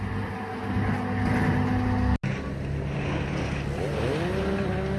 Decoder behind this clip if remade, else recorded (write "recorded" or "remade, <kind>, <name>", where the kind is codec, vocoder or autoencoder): recorded